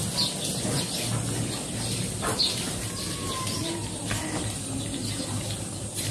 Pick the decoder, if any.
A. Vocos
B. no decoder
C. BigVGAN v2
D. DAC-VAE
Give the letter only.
B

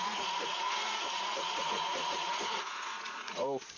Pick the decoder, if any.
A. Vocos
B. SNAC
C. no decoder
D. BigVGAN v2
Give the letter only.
A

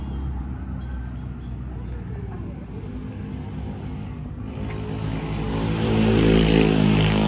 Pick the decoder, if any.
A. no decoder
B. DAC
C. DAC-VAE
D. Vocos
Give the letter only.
A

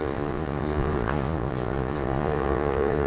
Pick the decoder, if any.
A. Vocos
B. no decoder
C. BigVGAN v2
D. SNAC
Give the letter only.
A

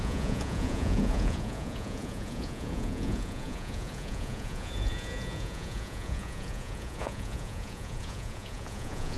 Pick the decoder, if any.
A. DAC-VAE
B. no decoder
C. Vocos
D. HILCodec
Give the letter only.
C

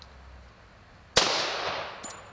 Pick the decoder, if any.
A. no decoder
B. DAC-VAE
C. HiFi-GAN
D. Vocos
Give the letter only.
A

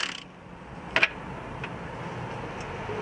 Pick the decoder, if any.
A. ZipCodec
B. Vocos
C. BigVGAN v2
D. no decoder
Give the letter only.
D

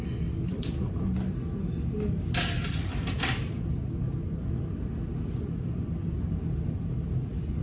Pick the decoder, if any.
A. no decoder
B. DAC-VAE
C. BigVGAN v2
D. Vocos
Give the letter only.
A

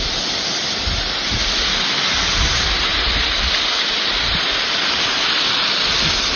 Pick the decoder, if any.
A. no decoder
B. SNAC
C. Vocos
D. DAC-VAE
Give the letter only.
A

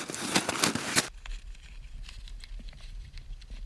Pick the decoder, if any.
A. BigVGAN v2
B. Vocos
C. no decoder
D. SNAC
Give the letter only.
C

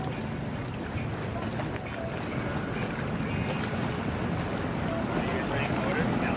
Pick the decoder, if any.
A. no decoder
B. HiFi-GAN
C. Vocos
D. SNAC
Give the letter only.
A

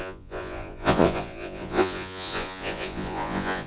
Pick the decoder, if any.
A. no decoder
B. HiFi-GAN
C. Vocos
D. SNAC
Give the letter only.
C